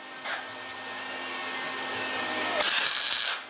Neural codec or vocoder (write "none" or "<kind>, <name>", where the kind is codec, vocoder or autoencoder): none